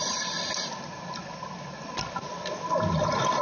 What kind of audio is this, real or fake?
fake